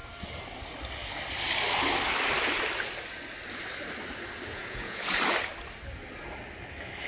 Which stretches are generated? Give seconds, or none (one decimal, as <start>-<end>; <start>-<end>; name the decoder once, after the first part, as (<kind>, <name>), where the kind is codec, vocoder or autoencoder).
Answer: 4.5-5.2 (vocoder, Vocos)